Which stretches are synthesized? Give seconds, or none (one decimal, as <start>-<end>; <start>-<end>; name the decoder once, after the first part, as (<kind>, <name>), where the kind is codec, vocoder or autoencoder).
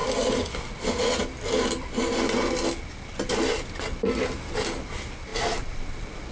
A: none